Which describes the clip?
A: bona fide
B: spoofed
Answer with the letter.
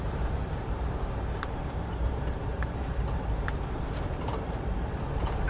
B